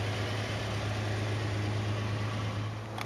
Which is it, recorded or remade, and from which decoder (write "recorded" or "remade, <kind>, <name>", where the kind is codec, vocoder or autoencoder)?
recorded